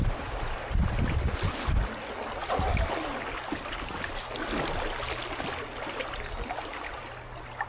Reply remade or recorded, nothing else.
recorded